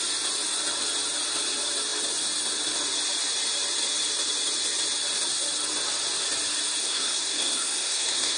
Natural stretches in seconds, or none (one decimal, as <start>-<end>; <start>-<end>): 0.0-6.8